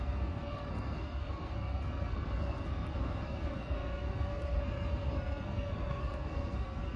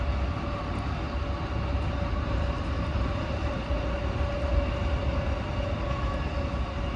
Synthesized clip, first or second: first